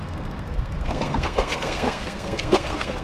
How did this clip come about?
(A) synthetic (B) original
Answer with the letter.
A